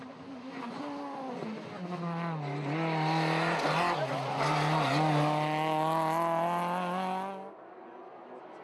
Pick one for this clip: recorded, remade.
recorded